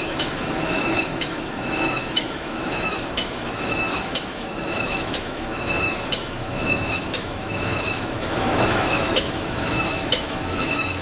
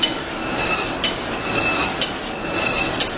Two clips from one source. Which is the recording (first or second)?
second